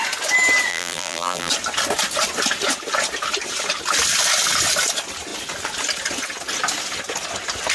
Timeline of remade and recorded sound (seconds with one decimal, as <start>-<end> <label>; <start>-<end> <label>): 0.0-0.7 recorded; 0.7-1.5 remade; 1.5-7.7 recorded